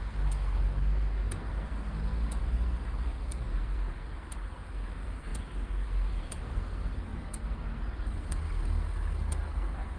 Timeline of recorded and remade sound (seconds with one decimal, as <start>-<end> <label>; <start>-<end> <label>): 0.0-10.0 remade